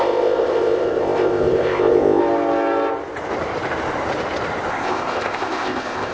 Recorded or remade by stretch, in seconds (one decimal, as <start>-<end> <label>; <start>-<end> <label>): 0.0-2.2 remade; 2.2-4.7 recorded; 4.7-6.1 remade